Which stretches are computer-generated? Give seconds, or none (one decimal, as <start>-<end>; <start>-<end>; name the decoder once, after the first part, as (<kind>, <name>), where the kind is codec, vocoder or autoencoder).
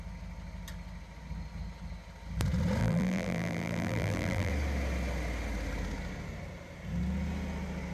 2.8-4.5 (vocoder, BigVGAN v2)